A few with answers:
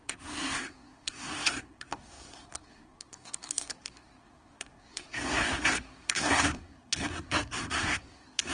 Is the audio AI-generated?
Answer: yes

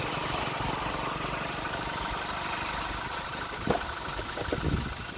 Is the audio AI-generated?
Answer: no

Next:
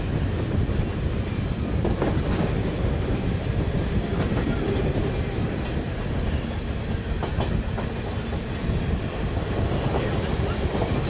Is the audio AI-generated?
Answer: no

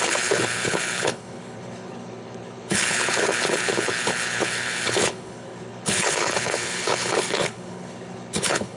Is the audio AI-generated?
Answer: yes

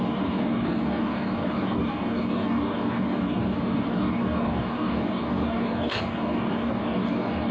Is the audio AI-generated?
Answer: yes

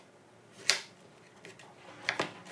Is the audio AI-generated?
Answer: no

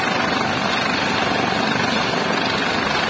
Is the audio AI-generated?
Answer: no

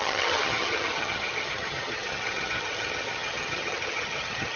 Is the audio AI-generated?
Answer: yes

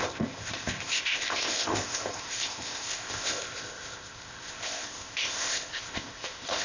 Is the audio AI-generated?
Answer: yes